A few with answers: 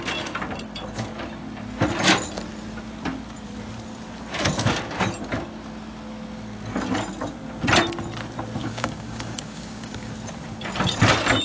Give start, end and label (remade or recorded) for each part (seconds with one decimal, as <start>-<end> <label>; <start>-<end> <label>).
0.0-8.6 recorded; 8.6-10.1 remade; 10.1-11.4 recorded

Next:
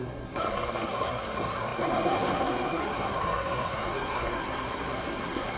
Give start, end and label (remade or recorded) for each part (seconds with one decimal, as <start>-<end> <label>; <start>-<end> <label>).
0.0-5.6 remade

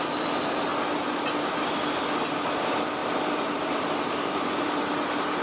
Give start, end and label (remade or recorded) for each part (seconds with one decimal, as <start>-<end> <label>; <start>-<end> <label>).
0.0-0.7 remade; 0.7-2.6 recorded; 2.6-5.4 remade